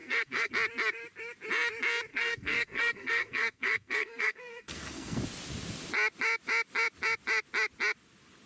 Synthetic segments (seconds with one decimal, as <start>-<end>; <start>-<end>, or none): 0.0-0.5; 2.1-5.2